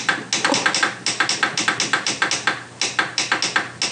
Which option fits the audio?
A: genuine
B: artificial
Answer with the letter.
A